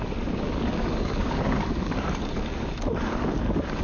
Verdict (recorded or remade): remade